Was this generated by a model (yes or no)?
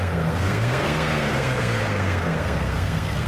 yes